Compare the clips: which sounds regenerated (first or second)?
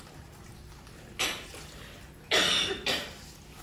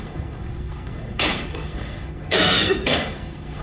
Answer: second